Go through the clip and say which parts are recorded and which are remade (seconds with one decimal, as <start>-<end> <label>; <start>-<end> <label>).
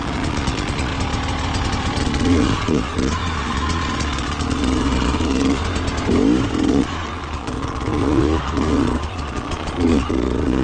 0.0-0.9 remade; 0.9-2.0 recorded; 2.0-5.6 remade; 5.6-6.7 recorded; 6.7-10.6 remade